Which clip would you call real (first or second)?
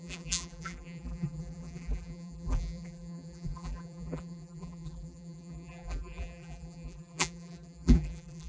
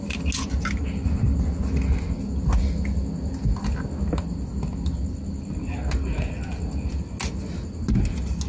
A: second